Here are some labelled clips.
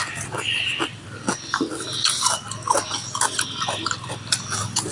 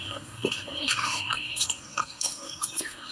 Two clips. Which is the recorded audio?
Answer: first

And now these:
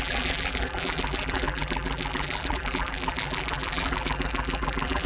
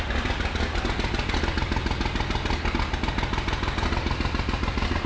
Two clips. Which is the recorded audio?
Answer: second